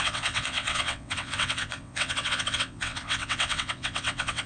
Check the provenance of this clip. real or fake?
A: fake